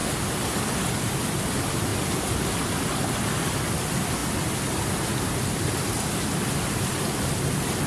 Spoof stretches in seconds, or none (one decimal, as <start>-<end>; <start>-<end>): none